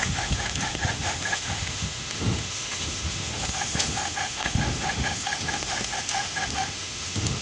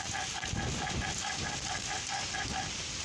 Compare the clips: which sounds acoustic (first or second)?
second